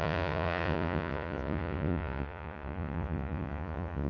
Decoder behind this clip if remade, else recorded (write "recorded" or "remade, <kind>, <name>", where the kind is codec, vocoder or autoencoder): remade, vocoder, Vocos